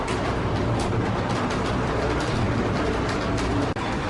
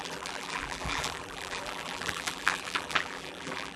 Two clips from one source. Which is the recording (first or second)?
first